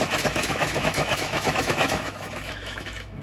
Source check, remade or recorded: remade